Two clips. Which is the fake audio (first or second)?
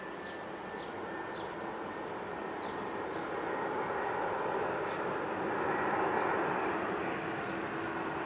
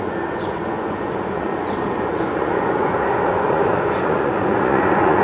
second